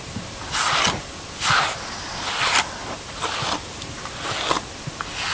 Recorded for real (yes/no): yes